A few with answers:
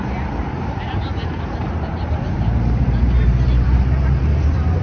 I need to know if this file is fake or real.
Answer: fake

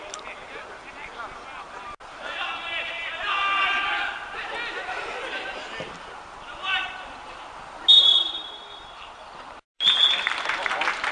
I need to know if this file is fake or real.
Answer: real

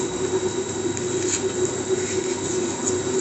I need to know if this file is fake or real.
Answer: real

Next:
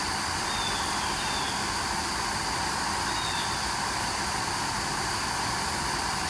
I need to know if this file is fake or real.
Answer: real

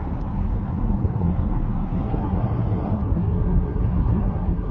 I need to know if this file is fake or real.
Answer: fake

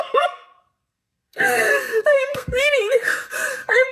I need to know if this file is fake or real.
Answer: fake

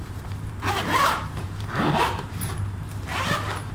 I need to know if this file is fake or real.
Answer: fake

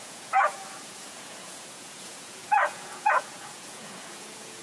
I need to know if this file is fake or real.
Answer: fake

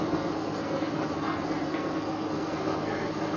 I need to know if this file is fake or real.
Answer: fake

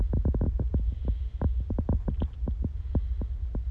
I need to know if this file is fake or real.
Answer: real